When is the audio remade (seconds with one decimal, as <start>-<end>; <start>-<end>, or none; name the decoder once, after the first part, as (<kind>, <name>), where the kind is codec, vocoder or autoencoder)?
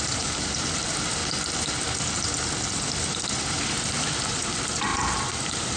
0.0-1.2 (vocoder, BigVGAN v2); 2.9-5.8